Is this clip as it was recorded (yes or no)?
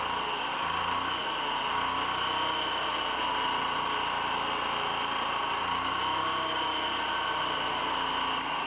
yes